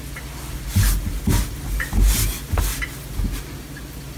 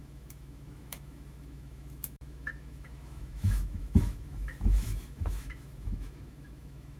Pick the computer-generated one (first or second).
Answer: second